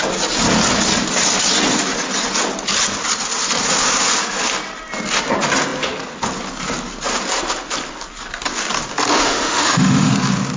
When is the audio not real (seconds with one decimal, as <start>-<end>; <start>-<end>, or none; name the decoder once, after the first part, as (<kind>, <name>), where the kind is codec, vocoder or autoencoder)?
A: 9.2-10.1 (autoencoder, DAC-VAE)